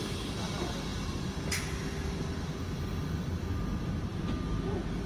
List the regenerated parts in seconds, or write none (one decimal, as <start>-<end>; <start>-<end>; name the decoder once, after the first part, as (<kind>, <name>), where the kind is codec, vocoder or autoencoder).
none